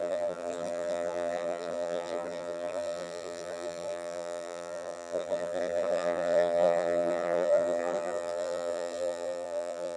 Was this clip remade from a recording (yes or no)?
yes